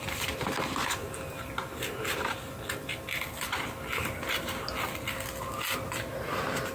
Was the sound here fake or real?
real